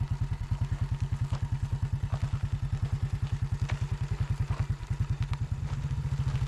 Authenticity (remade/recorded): recorded